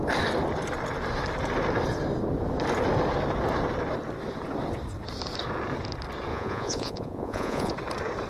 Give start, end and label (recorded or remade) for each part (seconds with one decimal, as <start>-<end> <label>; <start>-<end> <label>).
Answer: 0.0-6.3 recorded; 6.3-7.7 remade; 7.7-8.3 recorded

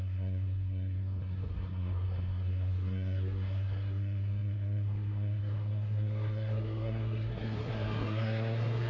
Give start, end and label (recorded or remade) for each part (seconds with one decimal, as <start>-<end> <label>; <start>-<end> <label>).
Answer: 0.0-8.9 remade

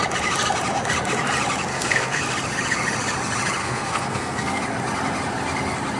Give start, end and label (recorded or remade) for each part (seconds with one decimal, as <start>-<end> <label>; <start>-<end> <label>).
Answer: 0.0-1.7 recorded; 1.7-2.2 remade; 2.2-3.6 recorded; 3.6-4.6 remade; 4.6-6.0 recorded